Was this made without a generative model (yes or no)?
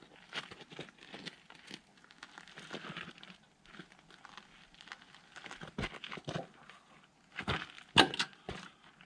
yes